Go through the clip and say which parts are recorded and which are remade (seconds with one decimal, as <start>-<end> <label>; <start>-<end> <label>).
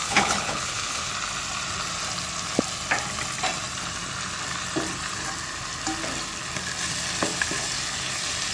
0.0-1.1 remade; 1.1-8.5 recorded